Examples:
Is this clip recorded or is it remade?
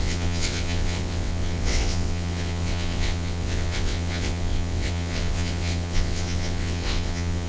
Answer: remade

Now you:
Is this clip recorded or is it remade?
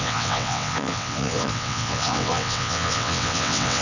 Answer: remade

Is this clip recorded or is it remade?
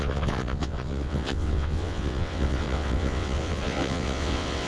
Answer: remade